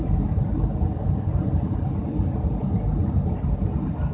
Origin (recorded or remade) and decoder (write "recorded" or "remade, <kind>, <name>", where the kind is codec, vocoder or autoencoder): recorded